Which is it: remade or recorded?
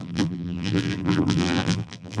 remade